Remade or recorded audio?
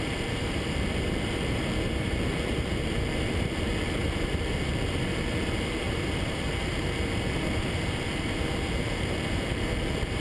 remade